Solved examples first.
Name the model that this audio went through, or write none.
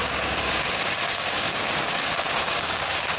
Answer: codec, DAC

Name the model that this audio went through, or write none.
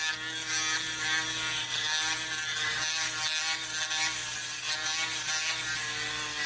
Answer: none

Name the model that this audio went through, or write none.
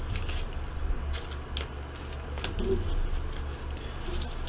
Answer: none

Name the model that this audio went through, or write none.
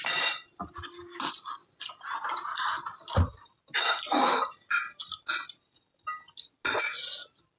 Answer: none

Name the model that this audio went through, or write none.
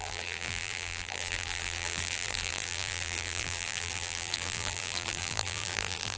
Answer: vocoder, BigVGAN v2